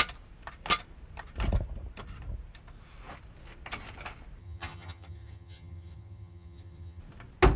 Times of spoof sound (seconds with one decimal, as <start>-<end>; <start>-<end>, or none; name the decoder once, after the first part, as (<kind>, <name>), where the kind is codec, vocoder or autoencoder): 4.4-7.0 (vocoder, HiFi-GAN)